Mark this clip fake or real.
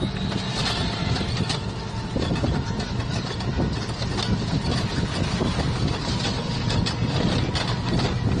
real